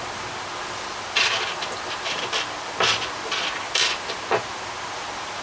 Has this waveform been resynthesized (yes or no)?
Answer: yes